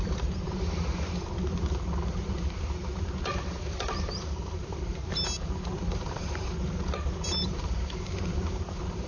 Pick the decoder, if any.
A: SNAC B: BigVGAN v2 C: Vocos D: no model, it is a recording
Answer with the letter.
B